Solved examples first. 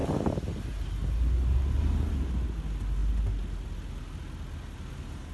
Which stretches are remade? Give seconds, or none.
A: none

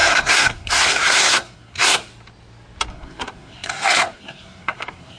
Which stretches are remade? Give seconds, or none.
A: 0.0-2.1; 2.9-5.2

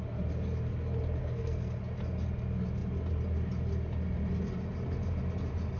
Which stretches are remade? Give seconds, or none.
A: 1.2-1.8

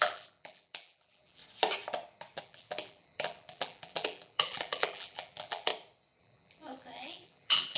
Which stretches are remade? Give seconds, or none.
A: 0.0-1.4; 2.4-5.7; 6.2-7.8

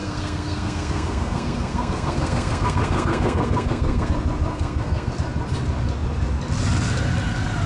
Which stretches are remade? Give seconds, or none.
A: 0.0-4.1; 4.5-5.1

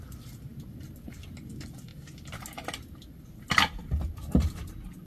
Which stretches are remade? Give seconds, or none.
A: none

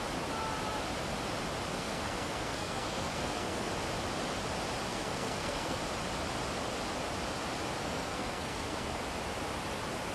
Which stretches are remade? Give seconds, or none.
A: 1.7-3.7; 4.9-5.8; 7.8-9.0